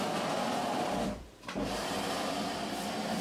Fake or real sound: fake